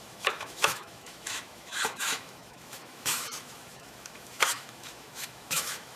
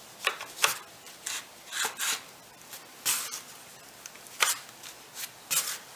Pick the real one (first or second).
second